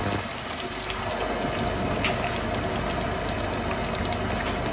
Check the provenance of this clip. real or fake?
real